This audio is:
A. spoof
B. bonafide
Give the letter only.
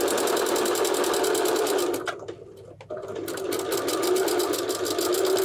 B